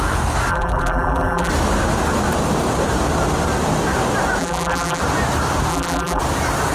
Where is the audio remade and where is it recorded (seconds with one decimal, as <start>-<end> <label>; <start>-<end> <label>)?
0.0-0.5 recorded; 0.5-1.5 remade; 1.5-4.4 recorded; 4.4-5.0 remade; 5.0-5.7 recorded; 5.7-6.2 remade; 6.2-6.7 recorded